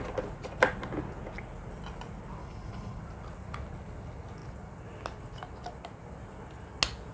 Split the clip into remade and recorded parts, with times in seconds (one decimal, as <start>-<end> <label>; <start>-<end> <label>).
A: 0.0-2.4 recorded; 2.4-3.0 remade; 3.0-7.1 recorded